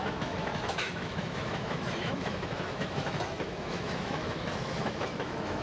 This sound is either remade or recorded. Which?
remade